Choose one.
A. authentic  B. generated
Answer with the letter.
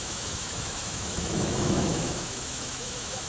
B